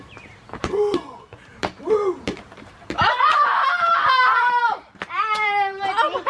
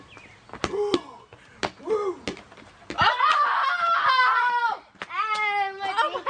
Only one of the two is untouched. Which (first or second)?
second